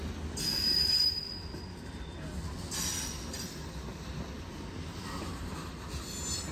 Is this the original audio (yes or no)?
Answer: yes